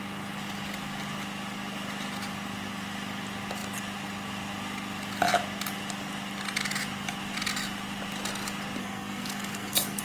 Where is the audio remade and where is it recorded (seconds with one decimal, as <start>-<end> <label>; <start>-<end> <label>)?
0.0-8.8 recorded; 8.8-10.0 remade